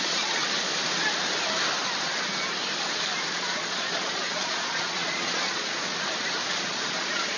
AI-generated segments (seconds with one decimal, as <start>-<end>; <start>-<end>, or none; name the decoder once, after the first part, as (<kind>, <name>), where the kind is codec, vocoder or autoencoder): 0.0-0.4 (vocoder, Vocos); 3.3-5.9; 6.6-7.4